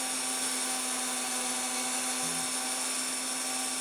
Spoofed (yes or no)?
no